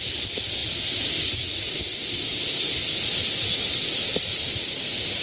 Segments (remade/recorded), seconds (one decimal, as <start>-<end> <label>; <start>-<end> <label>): 0.0-5.2 remade